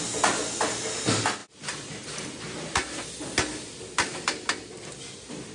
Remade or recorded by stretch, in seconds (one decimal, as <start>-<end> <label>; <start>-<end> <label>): 0.0-5.5 recorded